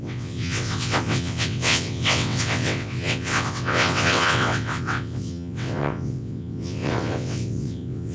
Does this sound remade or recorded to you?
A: remade